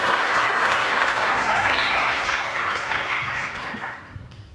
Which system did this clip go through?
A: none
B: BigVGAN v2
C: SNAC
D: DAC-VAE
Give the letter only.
C